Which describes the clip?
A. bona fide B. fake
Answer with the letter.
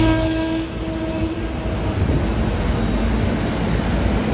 A